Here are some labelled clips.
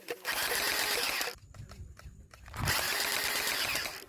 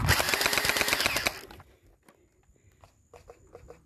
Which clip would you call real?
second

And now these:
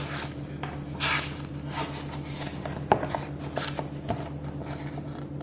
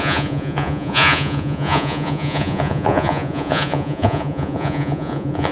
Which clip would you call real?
first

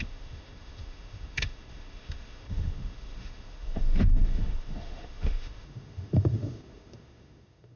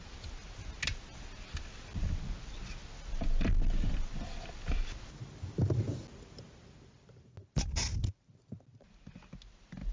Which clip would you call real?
second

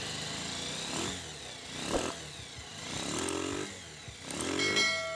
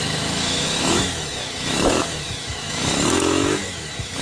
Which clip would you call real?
first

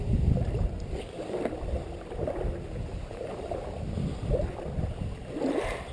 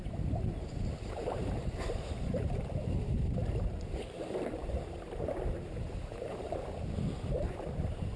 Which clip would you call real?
first